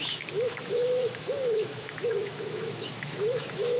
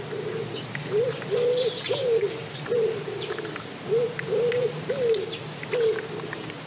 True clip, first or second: second